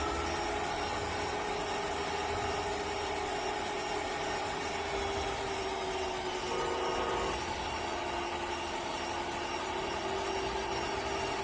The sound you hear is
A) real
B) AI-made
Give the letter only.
A